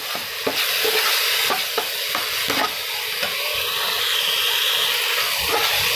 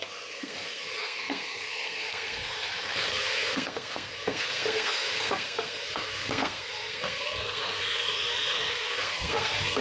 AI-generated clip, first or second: second